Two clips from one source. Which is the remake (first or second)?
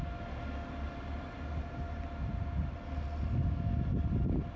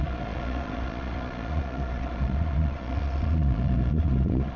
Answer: second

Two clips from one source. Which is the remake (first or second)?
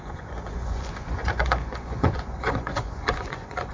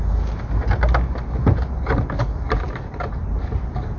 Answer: first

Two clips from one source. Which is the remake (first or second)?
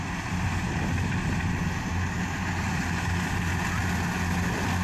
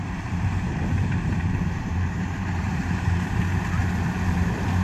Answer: second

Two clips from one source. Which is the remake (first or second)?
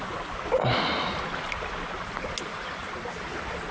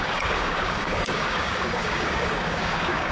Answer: second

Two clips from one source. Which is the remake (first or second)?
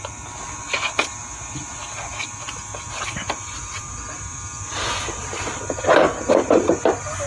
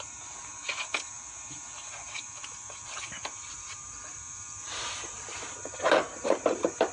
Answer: second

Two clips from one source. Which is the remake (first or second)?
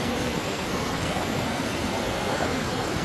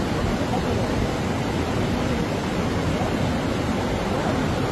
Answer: first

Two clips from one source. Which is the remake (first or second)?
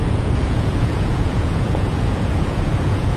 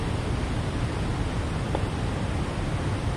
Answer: first